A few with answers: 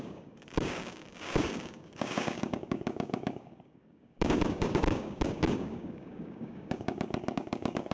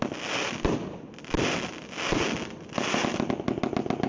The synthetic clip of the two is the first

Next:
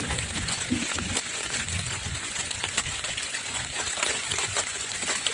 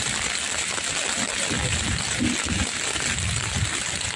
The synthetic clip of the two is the first